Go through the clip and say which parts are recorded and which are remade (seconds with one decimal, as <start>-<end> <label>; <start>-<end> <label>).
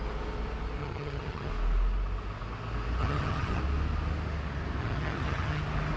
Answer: 0.0-0.8 recorded; 0.8-1.5 remade; 1.5-3.0 recorded; 3.0-3.6 remade; 3.6-4.8 recorded; 4.8-5.6 remade; 5.6-6.0 recorded